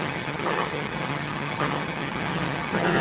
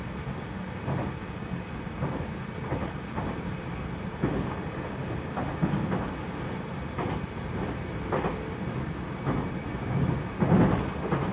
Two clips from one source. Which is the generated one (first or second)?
first